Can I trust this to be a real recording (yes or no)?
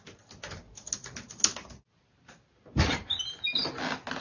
yes